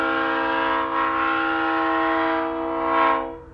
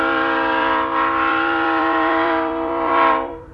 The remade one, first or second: second